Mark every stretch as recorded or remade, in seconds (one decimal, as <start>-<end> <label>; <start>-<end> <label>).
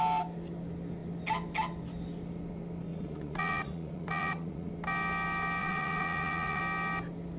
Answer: 0.0-2.9 recorded; 2.9-4.7 remade; 4.7-5.6 recorded; 5.6-6.6 remade; 6.6-7.4 recorded